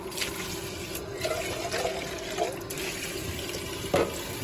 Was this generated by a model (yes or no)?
no